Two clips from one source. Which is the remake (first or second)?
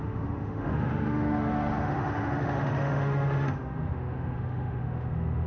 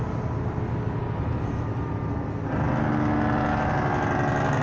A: first